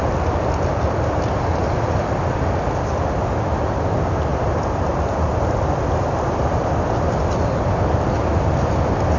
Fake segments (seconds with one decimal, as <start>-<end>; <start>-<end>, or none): 1.6-2.2; 4.3-7.7